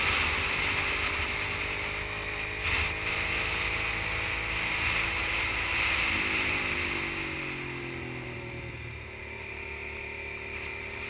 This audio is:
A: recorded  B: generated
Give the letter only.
A